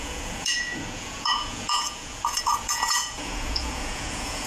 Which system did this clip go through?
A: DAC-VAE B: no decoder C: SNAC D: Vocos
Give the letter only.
D